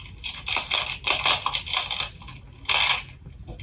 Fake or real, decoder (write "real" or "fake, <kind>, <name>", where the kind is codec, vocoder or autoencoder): real